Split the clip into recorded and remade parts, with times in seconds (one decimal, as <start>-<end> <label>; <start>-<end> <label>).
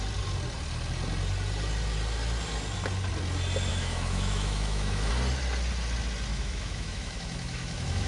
0.0-3.7 recorded; 3.7-5.1 remade; 5.1-6.3 recorded; 6.3-8.1 remade